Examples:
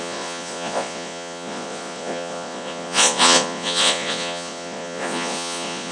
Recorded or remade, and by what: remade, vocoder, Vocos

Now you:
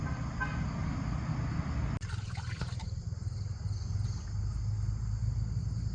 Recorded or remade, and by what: recorded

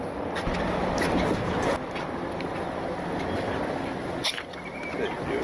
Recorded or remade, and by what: recorded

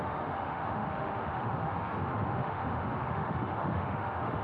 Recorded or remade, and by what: remade, autoencoder, DAC-VAE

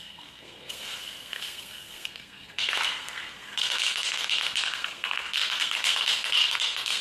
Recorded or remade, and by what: remade, codec, SNAC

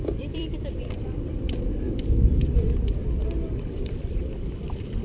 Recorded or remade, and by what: remade, vocoder, BigVGAN v2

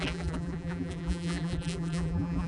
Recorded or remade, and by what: remade, vocoder, BigVGAN v2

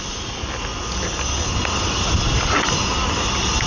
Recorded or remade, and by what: recorded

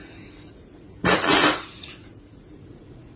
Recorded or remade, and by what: remade, vocoder, Vocos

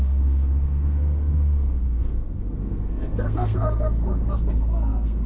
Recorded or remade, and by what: remade, codec, SNAC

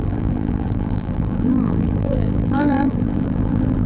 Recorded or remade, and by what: remade, vocoder, BigVGAN v2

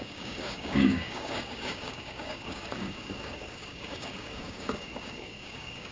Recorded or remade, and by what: remade, codec, DAC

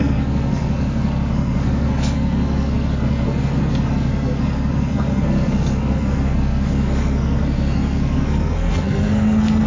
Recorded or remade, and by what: remade, codec, SNAC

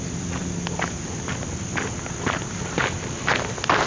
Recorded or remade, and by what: recorded